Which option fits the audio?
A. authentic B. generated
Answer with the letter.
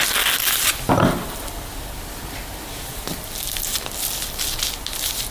A